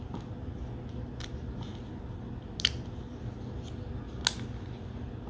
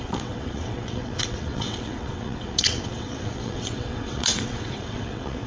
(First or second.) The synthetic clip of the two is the second